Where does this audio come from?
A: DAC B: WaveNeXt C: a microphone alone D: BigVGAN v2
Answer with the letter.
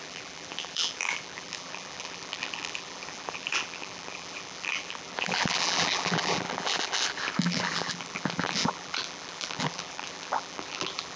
D